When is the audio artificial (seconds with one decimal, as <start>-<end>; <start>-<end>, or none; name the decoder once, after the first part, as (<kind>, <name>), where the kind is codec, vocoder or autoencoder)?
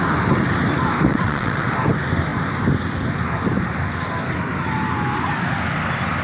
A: 1.1-1.7 (vocoder, WaveNeXt)